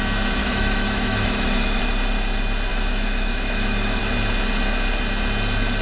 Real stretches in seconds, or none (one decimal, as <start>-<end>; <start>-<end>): 0.0-0.4; 1.8-2.7; 4.0-5.8